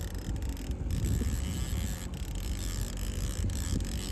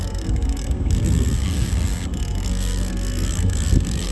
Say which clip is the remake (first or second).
second